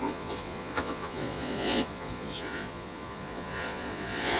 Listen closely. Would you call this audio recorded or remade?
remade